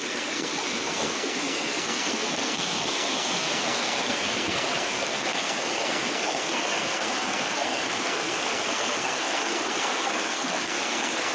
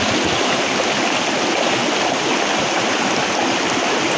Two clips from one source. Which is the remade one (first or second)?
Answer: first